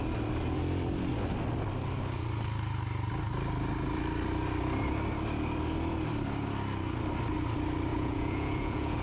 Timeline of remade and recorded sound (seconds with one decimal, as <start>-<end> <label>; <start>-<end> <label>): 0.0-7.9 recorded; 7.9-9.0 remade